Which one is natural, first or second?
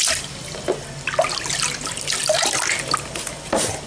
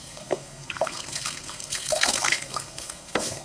first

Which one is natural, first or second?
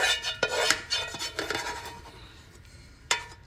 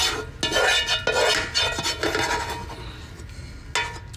second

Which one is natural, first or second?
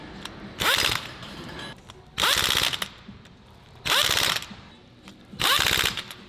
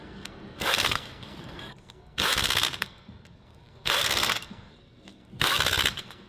first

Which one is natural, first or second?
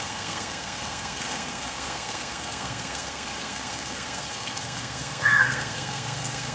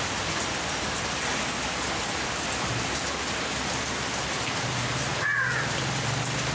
second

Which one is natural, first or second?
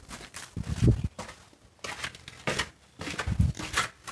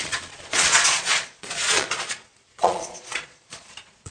first